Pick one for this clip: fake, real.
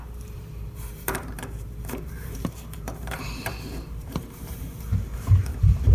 fake